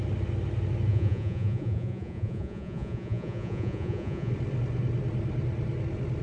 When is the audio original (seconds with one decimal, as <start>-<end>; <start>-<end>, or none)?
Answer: 0.0-0.9; 4.3-6.2